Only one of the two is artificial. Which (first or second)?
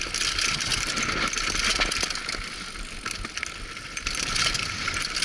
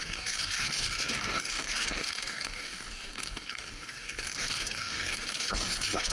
second